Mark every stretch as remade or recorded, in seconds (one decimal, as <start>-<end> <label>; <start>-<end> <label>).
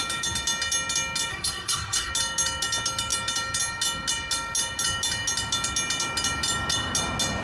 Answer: 0.0-1.3 recorded; 1.3-2.1 remade; 2.1-7.4 recorded